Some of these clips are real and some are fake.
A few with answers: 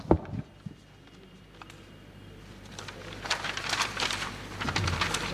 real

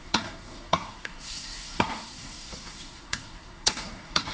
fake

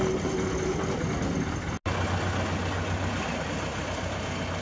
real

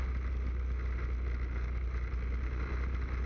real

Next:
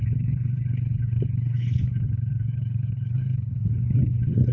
fake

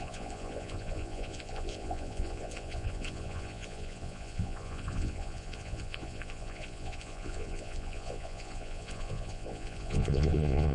fake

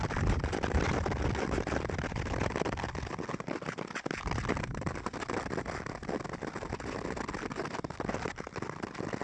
real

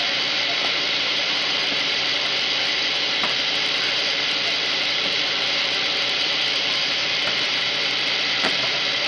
fake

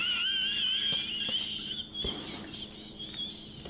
real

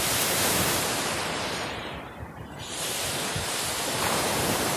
fake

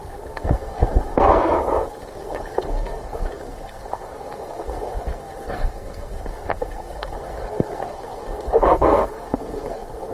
fake